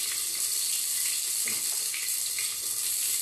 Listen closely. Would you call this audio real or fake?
real